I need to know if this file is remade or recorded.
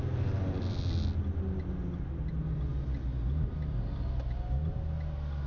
recorded